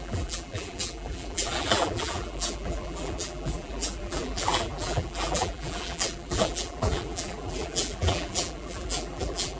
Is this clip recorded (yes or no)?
no